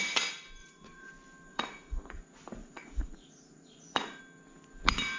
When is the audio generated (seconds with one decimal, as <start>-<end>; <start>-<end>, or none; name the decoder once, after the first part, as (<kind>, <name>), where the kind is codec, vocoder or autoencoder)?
0.6-1.1 (vocoder, Vocos); 1.5-2.2; 2.6-4.2